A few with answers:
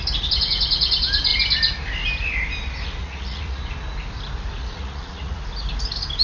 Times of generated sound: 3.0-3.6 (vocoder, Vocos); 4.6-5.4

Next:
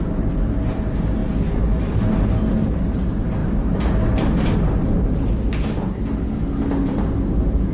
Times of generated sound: none

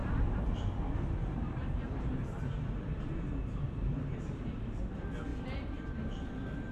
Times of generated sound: 0.0-0.7 (vocoder, BigVGAN v2); 1.2-4.8; 5.3-6.7